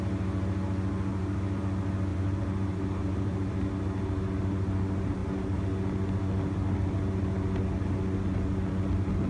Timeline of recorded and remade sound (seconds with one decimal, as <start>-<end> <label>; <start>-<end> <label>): 0.0-1.1 recorded; 1.1-1.6 remade; 1.6-2.1 recorded; 2.1-3.7 remade; 3.7-9.3 recorded